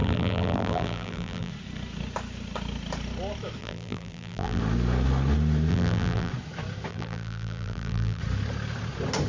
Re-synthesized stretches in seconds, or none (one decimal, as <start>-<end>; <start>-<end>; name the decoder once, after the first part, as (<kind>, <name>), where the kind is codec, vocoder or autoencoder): 0.0-1.5 (vocoder, BigVGAN v2); 3.6-4.6; 5.7-6.3; 6.9-8.2